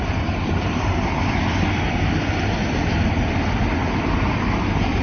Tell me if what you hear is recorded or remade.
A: recorded